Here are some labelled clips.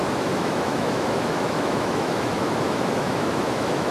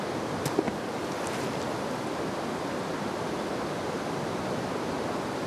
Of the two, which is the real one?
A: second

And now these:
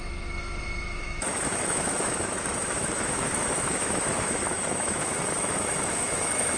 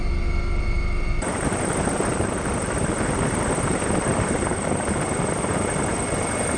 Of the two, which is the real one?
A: second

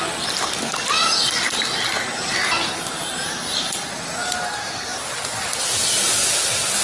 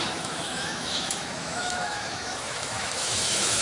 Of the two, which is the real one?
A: first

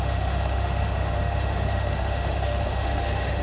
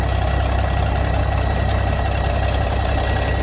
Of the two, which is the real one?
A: second